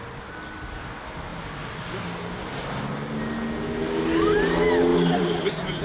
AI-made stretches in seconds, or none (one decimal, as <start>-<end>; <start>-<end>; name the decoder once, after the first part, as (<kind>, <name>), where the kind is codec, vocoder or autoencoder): 4.9-5.8 (vocoder, BigVGAN v2)